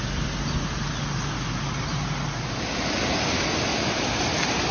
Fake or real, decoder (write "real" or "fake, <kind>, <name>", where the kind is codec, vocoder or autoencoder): real